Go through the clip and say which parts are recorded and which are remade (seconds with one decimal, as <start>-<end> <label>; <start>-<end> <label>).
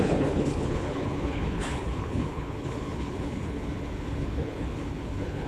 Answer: 0.0-5.5 remade